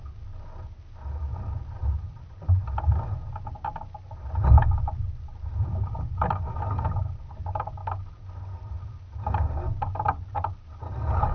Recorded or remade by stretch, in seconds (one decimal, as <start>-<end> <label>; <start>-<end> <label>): 0.0-11.3 recorded